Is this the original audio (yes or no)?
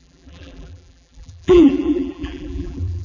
no